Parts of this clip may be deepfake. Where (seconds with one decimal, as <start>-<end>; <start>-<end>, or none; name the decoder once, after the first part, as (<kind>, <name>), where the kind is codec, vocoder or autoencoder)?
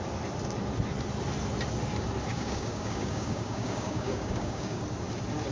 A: 2.3-4.8 (codec, DAC)